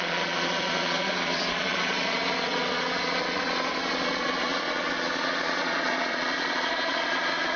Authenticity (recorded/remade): remade